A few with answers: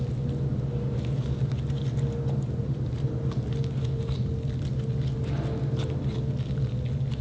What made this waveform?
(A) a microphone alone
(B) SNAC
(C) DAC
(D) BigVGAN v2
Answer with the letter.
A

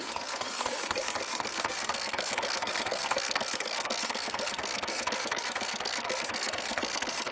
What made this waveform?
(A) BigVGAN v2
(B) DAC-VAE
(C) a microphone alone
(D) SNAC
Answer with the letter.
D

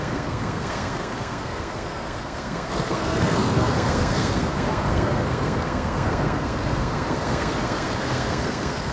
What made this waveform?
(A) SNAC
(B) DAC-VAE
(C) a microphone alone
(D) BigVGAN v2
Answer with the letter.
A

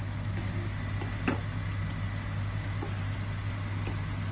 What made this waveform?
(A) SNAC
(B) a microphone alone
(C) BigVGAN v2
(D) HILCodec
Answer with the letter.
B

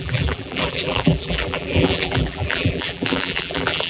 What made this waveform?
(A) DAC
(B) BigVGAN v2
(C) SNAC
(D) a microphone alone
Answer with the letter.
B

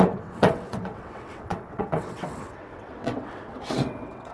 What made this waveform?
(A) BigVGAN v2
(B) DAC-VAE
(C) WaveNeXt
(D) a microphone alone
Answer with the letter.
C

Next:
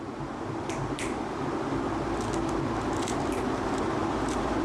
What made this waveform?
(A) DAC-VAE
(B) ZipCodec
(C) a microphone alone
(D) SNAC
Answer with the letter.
C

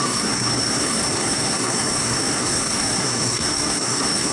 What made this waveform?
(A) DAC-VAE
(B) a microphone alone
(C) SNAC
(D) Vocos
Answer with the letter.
C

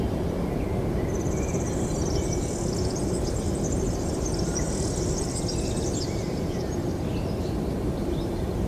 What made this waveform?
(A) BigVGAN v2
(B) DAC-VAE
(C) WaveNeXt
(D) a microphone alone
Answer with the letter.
A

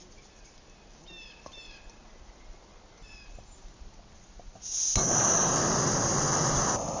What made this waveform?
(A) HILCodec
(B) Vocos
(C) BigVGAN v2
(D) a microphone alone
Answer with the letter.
D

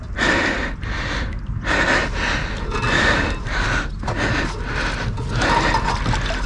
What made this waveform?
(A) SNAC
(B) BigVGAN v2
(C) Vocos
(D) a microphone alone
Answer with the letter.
D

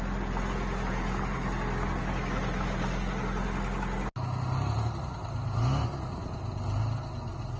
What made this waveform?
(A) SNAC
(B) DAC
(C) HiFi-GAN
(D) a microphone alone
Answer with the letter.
D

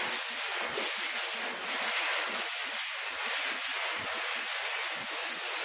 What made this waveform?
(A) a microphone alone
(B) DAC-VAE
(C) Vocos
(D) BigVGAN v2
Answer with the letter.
A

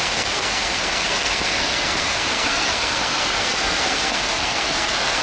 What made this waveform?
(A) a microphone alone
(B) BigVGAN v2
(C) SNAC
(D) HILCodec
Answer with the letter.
C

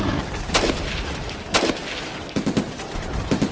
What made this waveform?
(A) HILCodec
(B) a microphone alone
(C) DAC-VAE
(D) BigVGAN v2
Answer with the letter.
B